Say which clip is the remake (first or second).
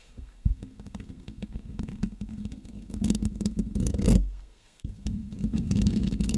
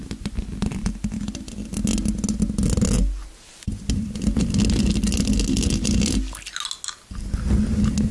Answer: first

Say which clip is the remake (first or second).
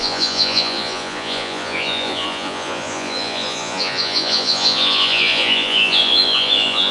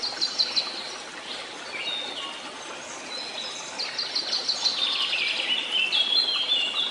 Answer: first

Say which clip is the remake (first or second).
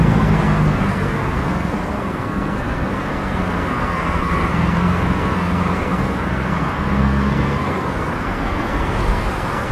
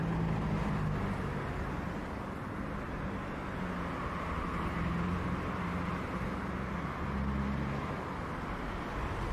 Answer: first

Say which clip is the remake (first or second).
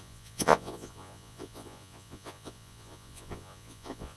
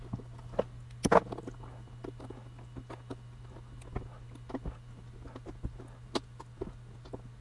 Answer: first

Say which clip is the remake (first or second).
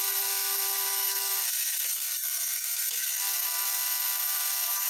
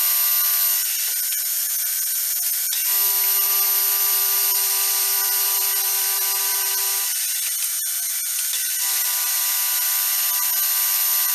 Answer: first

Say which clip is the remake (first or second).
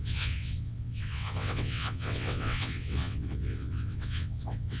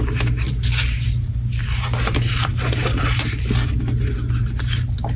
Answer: first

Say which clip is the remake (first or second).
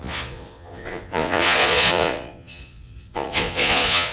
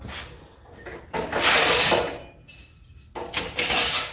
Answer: first